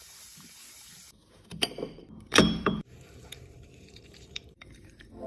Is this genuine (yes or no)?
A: no